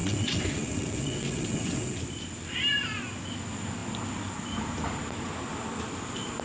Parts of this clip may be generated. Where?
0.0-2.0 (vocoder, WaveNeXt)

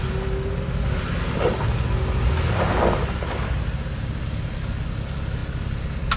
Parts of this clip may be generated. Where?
none

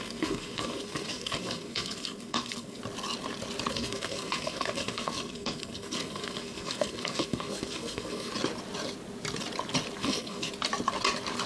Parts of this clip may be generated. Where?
0.0-2.8 (codec, SNAC); 3.7-8.3; 10.0-10.5